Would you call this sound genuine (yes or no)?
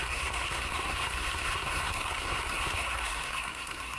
no